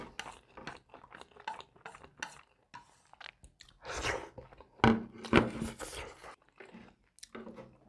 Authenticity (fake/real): real